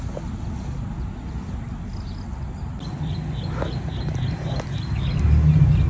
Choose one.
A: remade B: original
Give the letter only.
B